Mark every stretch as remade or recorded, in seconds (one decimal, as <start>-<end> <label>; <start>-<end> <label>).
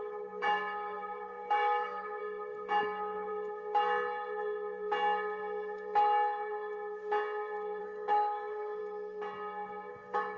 0.0-2.2 remade; 2.2-2.8 recorded; 2.8-3.3 remade; 3.3-7.8 recorded; 7.8-8.8 remade; 8.8-9.9 recorded; 9.9-10.4 remade